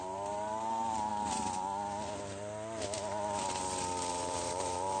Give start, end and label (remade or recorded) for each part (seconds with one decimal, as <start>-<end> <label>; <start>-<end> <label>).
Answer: 0.0-1.1 remade; 1.1-4.1 recorded; 4.1-5.0 remade